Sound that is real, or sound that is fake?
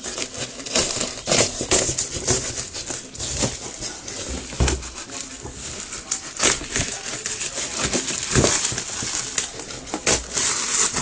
real